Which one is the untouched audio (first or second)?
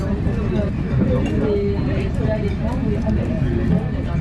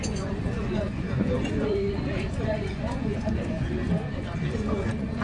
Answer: first